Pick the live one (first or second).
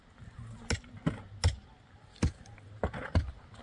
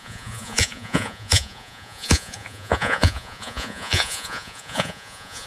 first